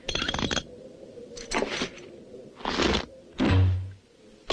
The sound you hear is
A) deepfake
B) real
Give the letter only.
B